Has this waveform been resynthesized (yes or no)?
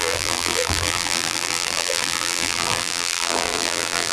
yes